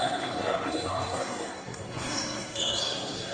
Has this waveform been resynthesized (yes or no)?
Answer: yes